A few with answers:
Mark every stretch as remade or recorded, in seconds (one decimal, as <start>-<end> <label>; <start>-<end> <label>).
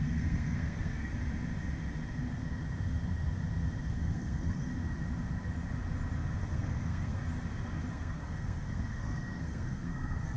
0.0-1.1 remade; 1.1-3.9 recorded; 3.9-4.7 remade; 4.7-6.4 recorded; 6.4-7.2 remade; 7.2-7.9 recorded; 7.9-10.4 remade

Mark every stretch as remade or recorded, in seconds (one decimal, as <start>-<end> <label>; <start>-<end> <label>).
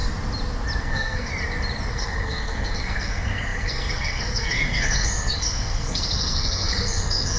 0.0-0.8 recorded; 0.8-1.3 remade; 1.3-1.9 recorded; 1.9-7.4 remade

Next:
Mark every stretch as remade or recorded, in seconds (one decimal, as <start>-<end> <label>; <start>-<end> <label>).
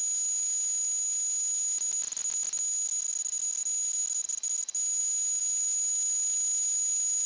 0.0-7.3 recorded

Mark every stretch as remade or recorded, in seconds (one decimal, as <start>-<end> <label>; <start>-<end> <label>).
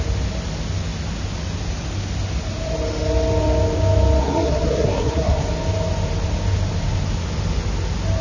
0.0-4.2 recorded; 4.2-5.5 remade; 5.5-8.2 recorded